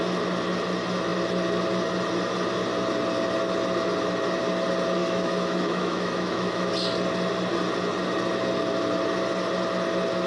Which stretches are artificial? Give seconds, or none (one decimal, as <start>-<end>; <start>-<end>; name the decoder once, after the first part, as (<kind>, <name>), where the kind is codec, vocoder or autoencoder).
5.0-6.7 (autoencoder, DAC-VAE)